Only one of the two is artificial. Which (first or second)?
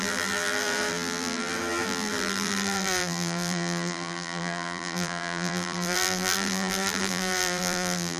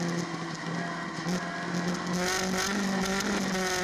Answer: first